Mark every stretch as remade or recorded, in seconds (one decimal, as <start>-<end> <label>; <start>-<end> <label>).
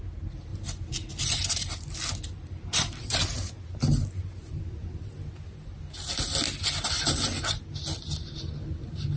0.0-9.2 recorded